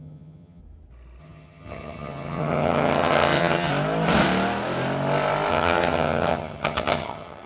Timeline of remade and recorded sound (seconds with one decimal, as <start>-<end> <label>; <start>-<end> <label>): 0.0-0.6 remade; 0.6-1.2 recorded; 1.2-3.7 remade; 3.7-5.5 recorded; 5.5-7.5 remade